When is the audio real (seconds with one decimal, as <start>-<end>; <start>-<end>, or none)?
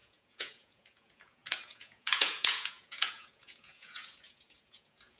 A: none